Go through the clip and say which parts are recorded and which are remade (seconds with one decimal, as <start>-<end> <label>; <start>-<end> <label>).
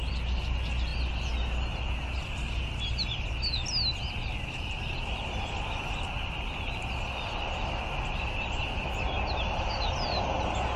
0.0-10.8 recorded